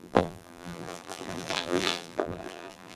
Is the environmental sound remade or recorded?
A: remade